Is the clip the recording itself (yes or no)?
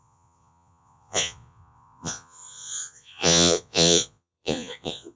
no